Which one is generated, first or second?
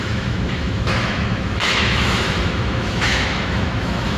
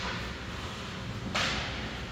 first